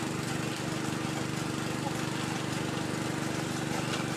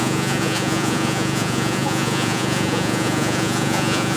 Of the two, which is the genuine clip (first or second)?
first